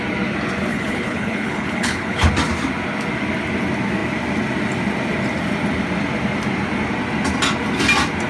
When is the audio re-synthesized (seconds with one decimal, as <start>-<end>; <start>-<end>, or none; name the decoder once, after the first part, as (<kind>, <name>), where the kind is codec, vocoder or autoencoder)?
0.7-2.3 (codec, HILCodec)